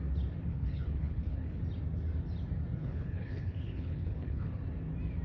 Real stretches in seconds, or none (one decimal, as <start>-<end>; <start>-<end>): 0.0-0.5; 1.6-2.8; 4.5-5.2